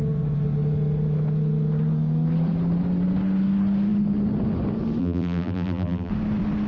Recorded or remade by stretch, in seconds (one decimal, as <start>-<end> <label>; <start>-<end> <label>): 0.0-5.0 recorded; 5.0-6.1 remade; 6.1-6.7 recorded

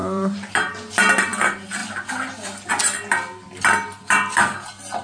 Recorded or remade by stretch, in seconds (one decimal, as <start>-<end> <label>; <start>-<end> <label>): 0.0-0.5 remade; 0.5-5.0 recorded

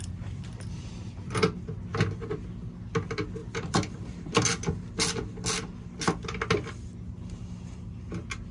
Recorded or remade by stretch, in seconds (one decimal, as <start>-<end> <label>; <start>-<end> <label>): 0.0-3.4 recorded; 3.4-4.2 remade; 4.2-8.5 recorded

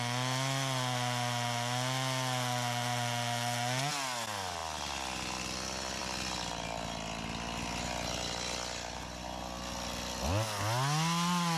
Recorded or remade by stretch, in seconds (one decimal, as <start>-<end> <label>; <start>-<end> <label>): 0.0-11.6 recorded

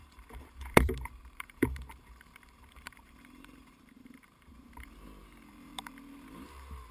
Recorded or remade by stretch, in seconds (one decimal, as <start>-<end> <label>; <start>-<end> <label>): 0.0-6.9 remade

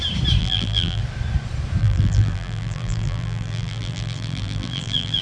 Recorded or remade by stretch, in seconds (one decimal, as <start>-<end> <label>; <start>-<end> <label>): 0.0-0.4 recorded; 0.4-1.0 remade; 1.0-1.8 recorded; 1.8-5.2 remade